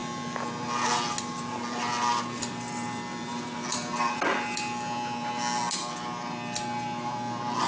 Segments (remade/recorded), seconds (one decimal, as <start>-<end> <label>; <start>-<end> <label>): 0.0-7.7 recorded